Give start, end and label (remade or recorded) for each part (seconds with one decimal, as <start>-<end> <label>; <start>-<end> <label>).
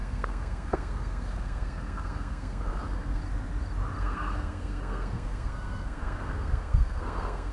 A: 0.0-3.2 remade; 3.2-4.0 recorded; 4.0-7.5 remade